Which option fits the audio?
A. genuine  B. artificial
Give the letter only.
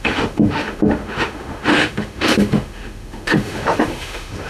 B